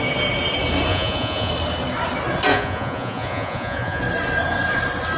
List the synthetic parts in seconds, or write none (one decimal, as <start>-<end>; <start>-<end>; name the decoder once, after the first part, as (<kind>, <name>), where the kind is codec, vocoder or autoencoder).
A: 0.9-1.5 (vocoder, Vocos); 2.5-4.0